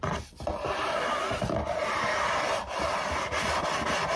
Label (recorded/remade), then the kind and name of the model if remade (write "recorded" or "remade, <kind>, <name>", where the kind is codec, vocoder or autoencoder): recorded